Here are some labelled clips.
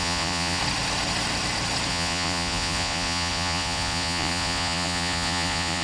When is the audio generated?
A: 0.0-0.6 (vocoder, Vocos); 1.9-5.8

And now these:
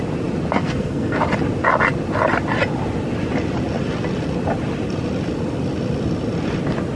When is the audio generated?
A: 0.6-1.2 (codec, SNAC)

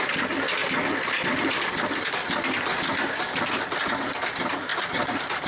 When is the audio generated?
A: none

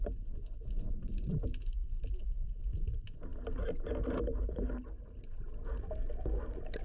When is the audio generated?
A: none